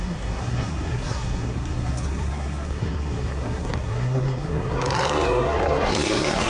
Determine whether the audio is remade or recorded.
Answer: remade